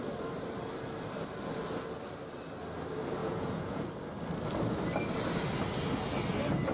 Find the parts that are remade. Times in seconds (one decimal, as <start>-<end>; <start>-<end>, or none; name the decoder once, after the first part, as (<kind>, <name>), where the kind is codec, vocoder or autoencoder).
3.2-3.9 (vocoder, Vocos)